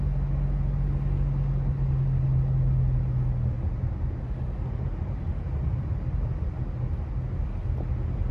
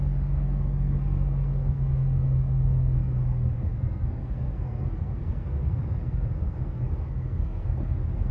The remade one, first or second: second